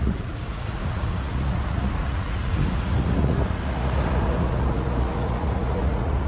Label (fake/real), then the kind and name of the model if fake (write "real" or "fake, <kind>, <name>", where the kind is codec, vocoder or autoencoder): fake, vocoder, Vocos